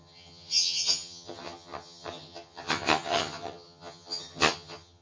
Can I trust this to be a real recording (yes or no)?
no